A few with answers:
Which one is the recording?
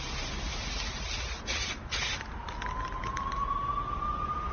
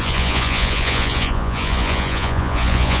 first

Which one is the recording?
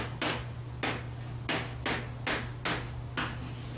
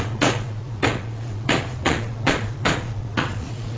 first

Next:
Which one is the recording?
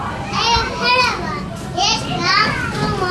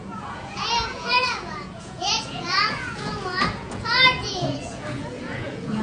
first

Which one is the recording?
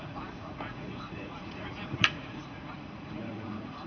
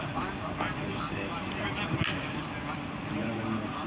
second